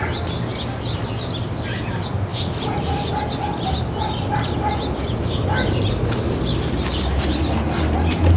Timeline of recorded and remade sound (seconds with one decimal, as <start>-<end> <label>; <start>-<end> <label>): 0.0-8.4 recorded